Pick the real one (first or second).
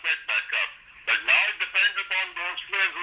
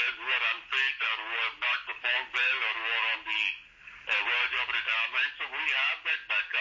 second